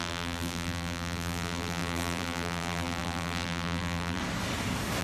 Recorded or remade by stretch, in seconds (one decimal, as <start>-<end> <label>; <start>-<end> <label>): 0.0-4.2 remade; 4.2-5.0 recorded